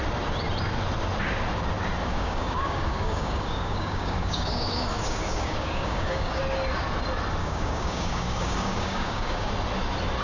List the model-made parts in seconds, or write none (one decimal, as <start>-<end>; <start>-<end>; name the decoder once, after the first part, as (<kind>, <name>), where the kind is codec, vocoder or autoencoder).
2.1-6.4 (codec, DAC); 7.4-9.5